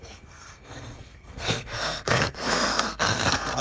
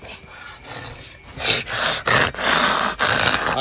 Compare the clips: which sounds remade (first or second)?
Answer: first